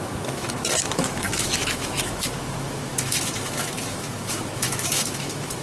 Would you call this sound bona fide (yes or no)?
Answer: no